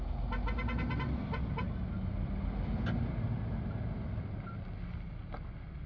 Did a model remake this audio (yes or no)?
no